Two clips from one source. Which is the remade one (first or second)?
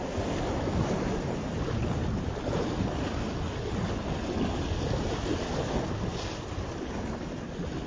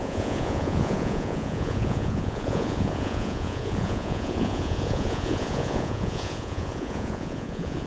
second